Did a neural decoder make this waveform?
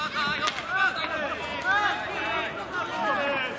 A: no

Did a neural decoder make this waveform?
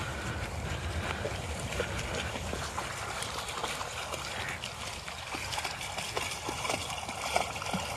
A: no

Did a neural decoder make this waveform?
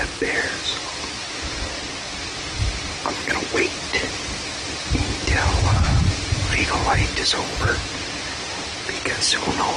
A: no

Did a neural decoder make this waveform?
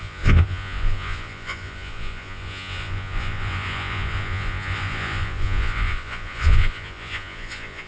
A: yes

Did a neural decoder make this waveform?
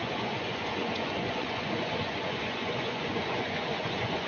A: yes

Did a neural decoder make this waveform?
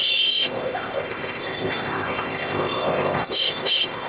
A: yes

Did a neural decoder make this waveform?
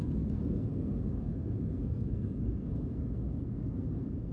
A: yes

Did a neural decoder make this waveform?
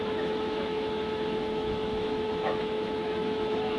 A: yes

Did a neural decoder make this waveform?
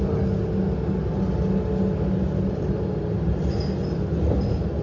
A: no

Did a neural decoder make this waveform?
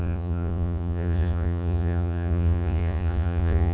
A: yes